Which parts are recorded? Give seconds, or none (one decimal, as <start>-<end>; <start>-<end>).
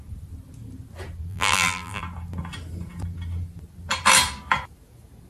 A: 0.0-1.3; 2.0-5.3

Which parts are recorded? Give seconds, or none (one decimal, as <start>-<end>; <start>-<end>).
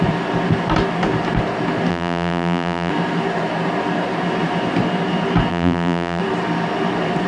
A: 0.0-1.9; 2.9-5.5; 6.2-7.3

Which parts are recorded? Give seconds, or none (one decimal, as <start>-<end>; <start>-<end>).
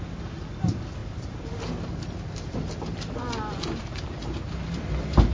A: 0.0-5.3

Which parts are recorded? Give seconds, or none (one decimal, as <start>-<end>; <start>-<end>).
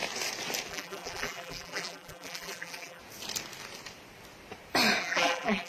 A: 0.0-0.7; 3.0-5.0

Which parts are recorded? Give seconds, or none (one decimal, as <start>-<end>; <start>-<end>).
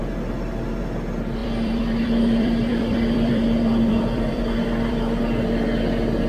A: 0.0-1.4; 5.2-6.3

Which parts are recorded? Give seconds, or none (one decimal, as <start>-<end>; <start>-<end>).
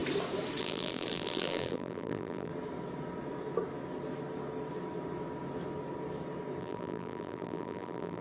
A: 0.0-0.6; 2.5-6.6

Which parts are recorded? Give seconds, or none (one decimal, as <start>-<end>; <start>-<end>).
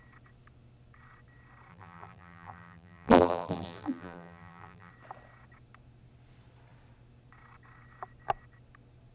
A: 0.0-1.7; 4.9-9.1